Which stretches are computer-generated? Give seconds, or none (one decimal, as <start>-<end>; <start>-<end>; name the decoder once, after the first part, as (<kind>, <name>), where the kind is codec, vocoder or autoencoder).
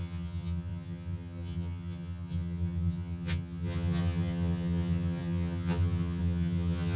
0.0-7.0 (vocoder, HiFi-GAN)